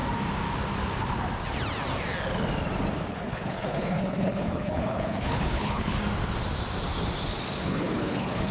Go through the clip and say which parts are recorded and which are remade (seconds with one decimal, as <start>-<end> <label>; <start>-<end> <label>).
0.0-3.1 recorded; 3.1-6.0 remade; 6.0-7.6 recorded; 7.6-8.5 remade